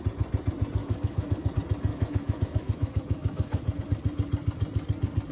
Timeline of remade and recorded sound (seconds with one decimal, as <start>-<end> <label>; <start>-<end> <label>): 0.0-0.8 recorded; 0.8-1.5 remade; 1.5-1.9 recorded; 1.9-3.8 remade; 3.8-5.3 recorded